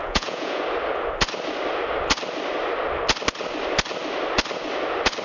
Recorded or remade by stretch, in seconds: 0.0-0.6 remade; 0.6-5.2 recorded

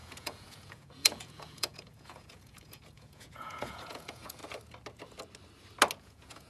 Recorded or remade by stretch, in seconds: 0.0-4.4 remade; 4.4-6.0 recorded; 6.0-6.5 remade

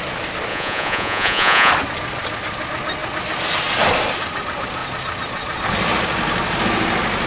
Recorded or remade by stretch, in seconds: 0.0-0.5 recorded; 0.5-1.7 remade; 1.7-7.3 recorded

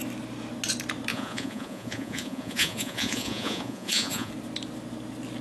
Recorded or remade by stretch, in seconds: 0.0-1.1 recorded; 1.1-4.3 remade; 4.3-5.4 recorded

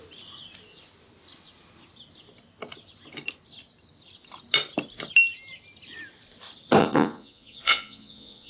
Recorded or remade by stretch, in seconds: 0.0-6.8 recorded; 6.8-8.5 remade